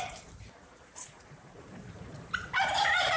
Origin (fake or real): fake